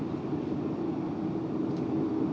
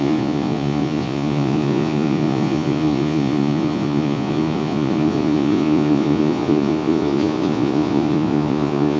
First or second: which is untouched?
first